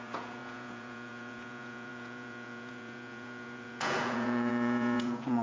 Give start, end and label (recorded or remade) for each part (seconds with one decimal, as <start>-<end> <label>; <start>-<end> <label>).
0.0-5.4 remade